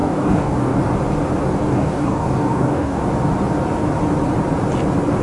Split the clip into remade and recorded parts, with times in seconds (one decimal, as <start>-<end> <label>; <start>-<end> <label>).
0.0-0.8 remade; 0.8-1.6 recorded; 1.6-3.0 remade; 3.0-5.2 recorded